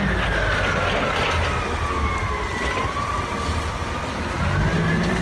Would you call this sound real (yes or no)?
yes